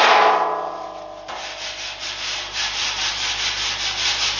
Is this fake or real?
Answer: real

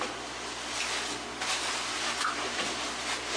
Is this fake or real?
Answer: real